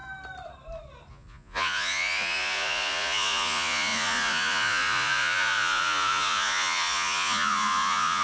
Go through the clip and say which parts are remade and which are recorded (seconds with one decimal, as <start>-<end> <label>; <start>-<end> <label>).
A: 0.0-1.1 recorded; 1.1-8.2 remade